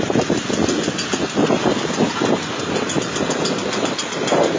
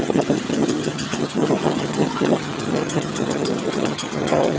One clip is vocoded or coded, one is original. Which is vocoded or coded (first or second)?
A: second